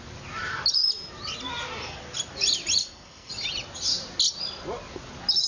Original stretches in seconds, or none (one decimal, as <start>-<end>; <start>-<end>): 0.0-2.8; 3.3-5.5